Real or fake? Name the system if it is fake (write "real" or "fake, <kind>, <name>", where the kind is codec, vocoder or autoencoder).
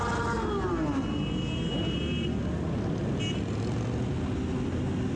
real